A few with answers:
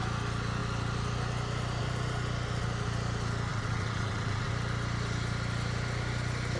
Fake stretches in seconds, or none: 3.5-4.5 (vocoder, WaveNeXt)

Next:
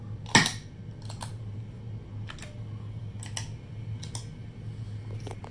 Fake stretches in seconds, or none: none

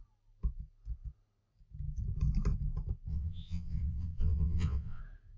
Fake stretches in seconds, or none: 3.1-5.0 (vocoder, WaveNeXt)

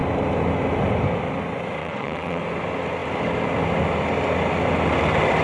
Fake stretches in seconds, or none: 1.8-2.4 (vocoder, WaveNeXt)

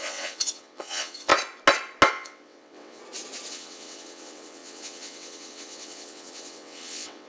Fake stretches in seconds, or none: 0.0-1.3 (vocoder, WaveNeXt); 2.1-3.0; 3.5-7.3

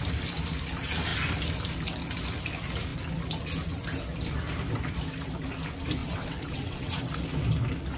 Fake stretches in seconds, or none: 6.0-7.0 (vocoder, WaveNeXt)